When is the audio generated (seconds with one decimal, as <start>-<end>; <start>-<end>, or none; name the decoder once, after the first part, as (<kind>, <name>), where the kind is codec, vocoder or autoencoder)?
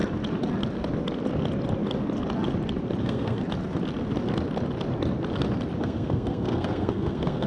3.0-3.4 (codec, SNAC); 5.8-7.5